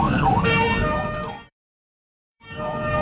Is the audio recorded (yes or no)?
no